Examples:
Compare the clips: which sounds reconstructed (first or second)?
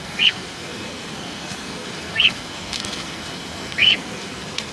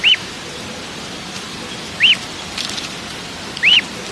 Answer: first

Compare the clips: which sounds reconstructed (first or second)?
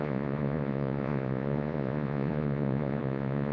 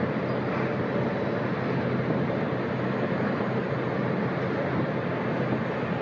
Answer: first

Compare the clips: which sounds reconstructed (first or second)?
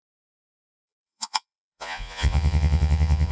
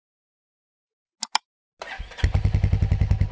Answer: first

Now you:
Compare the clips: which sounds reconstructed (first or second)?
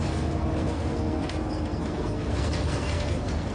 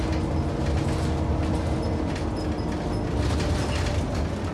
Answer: first